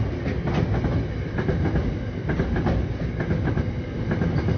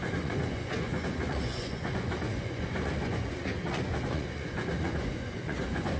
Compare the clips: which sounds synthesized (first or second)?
second